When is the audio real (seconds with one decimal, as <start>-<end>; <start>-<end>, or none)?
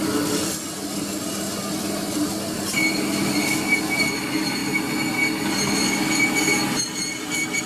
0.0-7.7